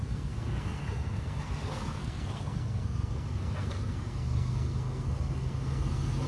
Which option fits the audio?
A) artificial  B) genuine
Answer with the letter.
A